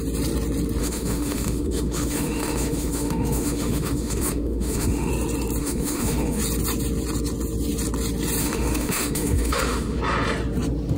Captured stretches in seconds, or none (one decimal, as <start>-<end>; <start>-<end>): 0.0-0.8; 5.1-5.6; 6.4-8.4; 10.0-11.0